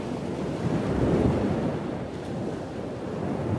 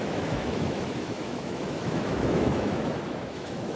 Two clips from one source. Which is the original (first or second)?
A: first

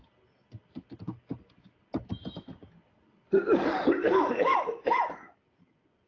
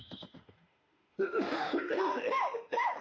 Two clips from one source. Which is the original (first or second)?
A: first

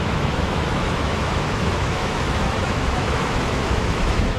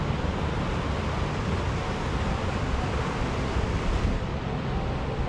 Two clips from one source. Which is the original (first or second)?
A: second